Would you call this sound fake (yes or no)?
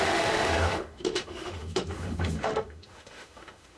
yes